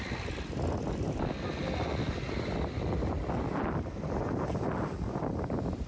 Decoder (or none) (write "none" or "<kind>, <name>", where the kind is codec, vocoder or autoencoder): none